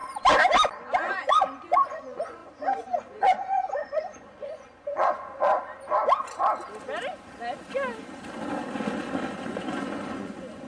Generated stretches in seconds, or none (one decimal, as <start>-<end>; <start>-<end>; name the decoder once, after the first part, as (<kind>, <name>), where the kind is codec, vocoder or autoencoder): 1.1-5.5 (vocoder, Vocos); 9.4-10.7